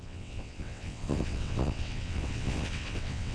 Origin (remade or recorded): remade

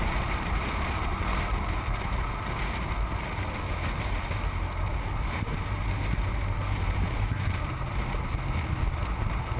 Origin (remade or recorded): recorded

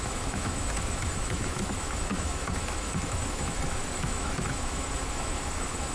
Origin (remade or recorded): remade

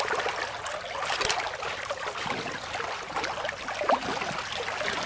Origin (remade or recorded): recorded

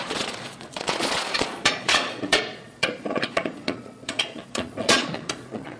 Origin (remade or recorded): remade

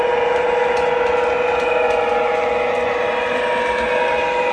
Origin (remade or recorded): recorded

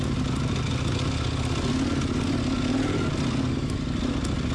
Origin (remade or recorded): recorded